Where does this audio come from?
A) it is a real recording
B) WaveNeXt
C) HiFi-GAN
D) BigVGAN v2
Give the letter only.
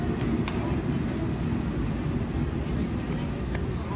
A